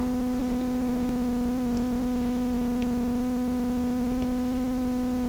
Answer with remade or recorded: recorded